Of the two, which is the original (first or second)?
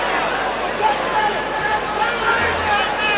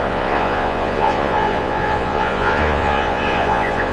first